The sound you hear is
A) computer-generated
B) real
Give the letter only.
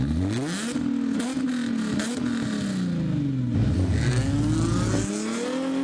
B